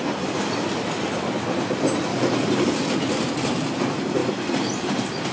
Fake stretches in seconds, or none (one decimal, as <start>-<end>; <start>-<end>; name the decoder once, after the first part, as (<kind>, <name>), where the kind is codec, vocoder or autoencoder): none